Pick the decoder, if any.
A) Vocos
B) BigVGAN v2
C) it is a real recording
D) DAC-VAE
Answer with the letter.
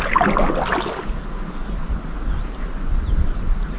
C